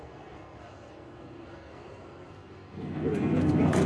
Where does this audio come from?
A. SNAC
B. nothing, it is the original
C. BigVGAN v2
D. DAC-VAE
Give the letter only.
A